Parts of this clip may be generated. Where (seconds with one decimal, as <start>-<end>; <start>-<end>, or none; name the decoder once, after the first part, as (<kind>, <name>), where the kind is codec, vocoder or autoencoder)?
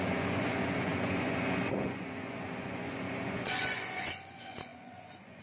0.0-5.4 (vocoder, Vocos)